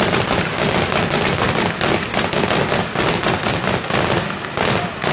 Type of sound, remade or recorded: recorded